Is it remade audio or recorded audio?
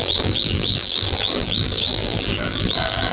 remade